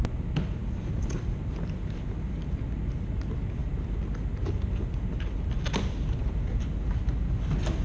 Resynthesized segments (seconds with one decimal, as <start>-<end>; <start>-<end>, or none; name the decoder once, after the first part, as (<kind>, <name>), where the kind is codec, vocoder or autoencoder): none

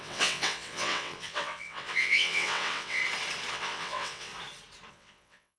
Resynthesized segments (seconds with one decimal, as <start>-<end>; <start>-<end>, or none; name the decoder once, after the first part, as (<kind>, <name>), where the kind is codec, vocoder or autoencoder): 0.0-3.0 (vocoder, WaveNeXt); 3.5-4.3; 4.9-5.6

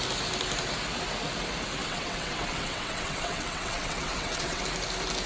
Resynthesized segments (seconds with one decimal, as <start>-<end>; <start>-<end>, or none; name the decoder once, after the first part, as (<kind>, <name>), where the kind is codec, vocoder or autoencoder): 1.8-4.6 (vocoder, WaveNeXt)

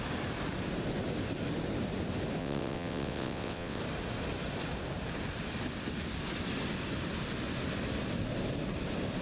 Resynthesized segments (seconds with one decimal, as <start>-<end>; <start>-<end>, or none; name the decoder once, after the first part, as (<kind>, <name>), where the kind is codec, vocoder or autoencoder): 2.4-3.8 (vocoder, WaveNeXt)

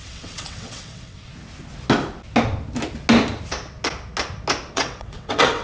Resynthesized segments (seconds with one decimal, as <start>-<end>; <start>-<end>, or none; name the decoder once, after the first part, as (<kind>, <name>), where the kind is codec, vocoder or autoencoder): 0.0-1.3 (vocoder, WaveNeXt); 4.7-5.6